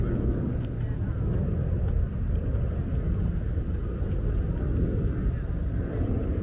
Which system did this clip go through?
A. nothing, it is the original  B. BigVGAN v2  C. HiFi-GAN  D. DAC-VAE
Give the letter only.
A